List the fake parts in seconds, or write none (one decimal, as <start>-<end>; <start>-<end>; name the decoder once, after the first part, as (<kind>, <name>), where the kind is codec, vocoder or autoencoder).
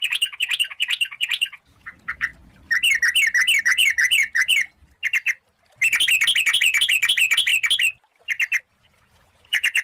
0.0-2.3 (vocoder, Vocos); 3.6-4.8; 6.4-7.5; 8.6-9.8